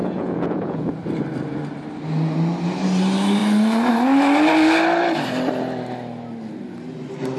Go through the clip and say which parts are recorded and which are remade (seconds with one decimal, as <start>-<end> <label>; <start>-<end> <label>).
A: 0.0-1.0 remade; 1.0-7.4 recorded